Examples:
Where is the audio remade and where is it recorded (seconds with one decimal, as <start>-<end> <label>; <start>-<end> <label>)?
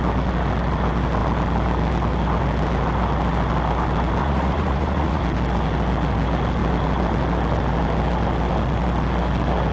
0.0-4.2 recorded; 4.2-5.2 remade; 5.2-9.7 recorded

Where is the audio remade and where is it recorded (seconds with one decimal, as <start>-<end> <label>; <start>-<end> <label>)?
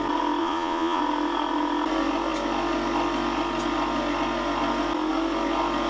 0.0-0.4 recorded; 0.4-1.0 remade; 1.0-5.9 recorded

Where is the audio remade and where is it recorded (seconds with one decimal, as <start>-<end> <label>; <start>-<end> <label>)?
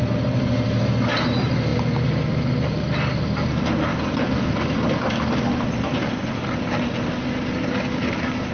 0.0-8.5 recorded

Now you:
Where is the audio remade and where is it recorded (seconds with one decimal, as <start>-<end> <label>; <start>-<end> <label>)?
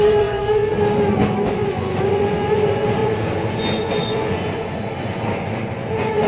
0.0-0.6 remade; 0.6-1.5 recorded; 1.5-6.3 remade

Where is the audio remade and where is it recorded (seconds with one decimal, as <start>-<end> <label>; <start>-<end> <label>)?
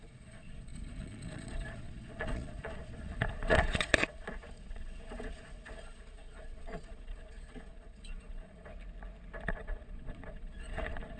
0.0-8.7 remade; 8.7-9.5 recorded; 9.5-11.2 remade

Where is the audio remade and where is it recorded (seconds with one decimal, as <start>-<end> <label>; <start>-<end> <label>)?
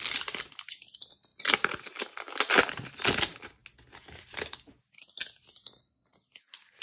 0.0-6.8 recorded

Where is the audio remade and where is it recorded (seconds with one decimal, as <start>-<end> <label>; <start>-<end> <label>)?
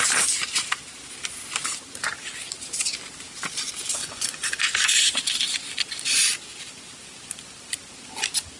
0.0-4.0 recorded; 4.0-4.6 remade; 4.6-8.6 recorded